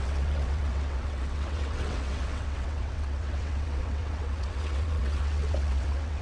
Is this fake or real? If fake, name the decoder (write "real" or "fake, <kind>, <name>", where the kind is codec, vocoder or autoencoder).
fake, vocoder, WaveNeXt